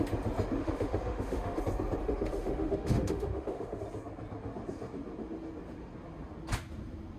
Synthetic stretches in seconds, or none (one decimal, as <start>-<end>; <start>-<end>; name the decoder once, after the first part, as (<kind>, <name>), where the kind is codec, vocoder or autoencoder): 0.6-1.6 (autoencoder, DAC-VAE); 2.0-3.8